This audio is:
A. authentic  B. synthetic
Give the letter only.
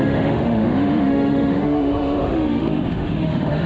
B